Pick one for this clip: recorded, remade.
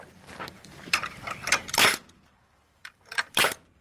remade